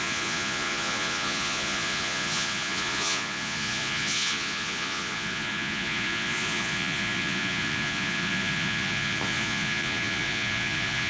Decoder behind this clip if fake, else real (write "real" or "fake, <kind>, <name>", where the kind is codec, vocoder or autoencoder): fake, vocoder, Vocos